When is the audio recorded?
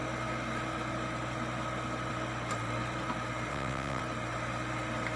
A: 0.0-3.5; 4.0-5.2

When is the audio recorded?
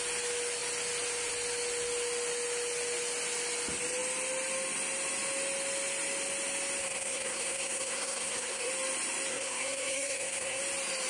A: 0.0-6.8; 8.7-9.3; 10.6-11.1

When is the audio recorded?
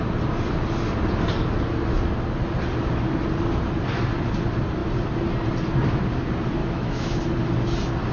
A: 0.0-6.6; 7.2-8.1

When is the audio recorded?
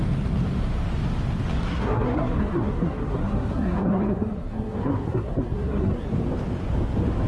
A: 0.0-1.7; 6.1-7.3